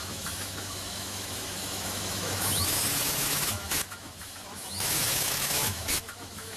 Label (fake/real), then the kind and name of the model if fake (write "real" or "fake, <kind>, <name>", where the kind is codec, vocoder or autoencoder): fake, autoencoder, DAC-VAE